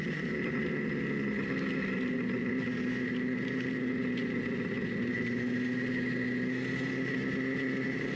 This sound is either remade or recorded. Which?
recorded